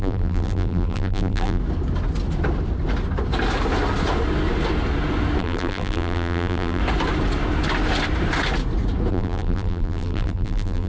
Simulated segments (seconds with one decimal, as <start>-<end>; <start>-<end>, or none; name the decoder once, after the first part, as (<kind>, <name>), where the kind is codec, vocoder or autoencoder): 0.0-1.6 (vocoder, BigVGAN v2); 5.4-6.8; 9.1-10.9